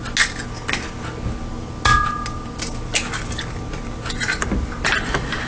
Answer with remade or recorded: recorded